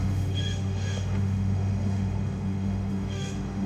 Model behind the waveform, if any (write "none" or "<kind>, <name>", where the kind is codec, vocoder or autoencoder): autoencoder, DAC-VAE